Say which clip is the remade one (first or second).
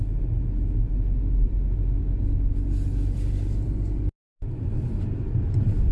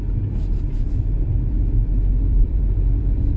second